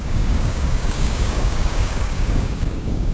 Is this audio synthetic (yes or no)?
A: yes